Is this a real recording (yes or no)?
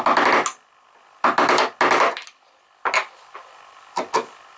yes